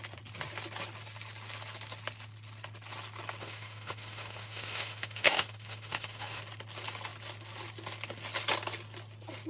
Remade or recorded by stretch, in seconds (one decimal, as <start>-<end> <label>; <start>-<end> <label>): 0.0-3.4 recorded; 3.4-6.4 remade; 6.4-9.5 recorded